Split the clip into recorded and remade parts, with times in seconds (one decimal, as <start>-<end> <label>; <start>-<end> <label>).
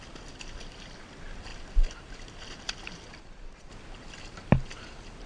0.0-3.2 recorded; 3.2-3.7 remade; 3.7-5.3 recorded